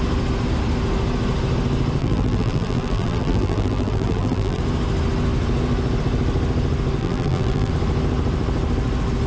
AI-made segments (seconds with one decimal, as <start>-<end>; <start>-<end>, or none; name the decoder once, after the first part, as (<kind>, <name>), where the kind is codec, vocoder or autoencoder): 2.0-4.6 (vocoder, BigVGAN v2); 7.0-7.7